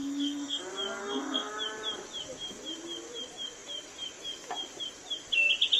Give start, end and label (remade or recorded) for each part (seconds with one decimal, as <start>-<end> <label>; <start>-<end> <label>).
0.0-0.6 remade; 0.6-1.0 recorded; 1.0-1.5 remade; 1.5-5.8 recorded